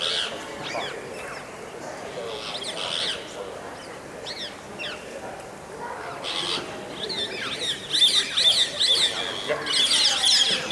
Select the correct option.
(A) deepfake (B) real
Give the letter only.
B